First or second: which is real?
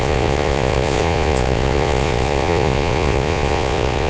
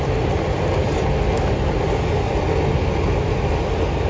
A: second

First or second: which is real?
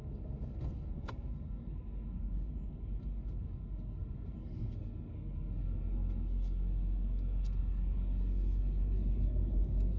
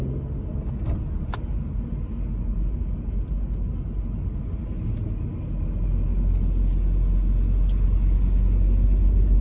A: second